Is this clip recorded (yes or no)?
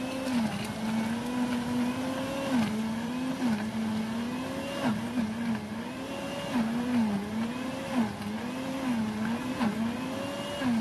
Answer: yes